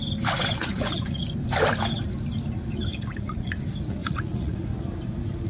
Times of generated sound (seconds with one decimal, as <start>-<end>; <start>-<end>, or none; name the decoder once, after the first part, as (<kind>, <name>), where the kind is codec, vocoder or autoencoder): 0.7-1.2 (vocoder, Vocos); 2.9-3.6; 4.0-4.7